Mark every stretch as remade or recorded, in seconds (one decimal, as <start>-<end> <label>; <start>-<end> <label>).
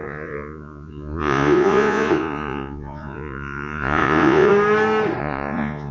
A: 0.0-4.5 remade; 4.5-5.2 recorded; 5.2-5.9 remade